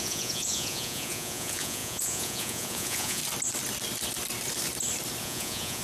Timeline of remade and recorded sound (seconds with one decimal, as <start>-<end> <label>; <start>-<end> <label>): 0.0-3.2 remade; 3.2-5.2 recorded; 5.2-5.8 remade